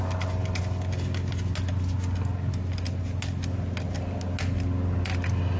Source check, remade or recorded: recorded